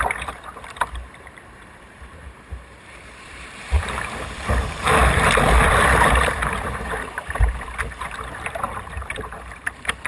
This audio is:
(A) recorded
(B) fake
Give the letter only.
B